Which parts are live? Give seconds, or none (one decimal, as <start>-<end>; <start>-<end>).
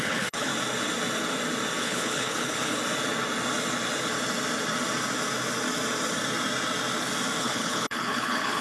0.5-1.8; 2.8-7.4